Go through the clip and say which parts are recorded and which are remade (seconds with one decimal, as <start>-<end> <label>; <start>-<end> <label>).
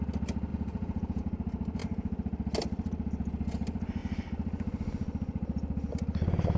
0.0-0.5 recorded; 0.5-1.2 remade; 1.2-6.6 recorded